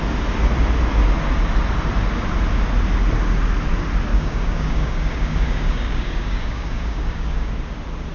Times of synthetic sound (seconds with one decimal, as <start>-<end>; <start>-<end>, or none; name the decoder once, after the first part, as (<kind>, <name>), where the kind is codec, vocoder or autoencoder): 4.1-7.5 (codec, DAC)